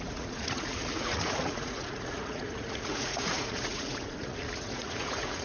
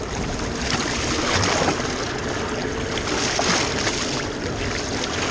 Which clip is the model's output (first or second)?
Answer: first